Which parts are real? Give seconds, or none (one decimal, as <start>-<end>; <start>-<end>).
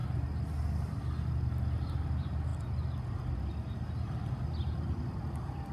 0.0-5.7